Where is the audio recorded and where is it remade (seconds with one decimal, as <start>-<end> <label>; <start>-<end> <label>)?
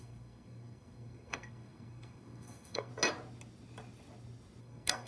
0.0-2.9 remade; 2.9-4.6 recorded; 4.6-5.1 remade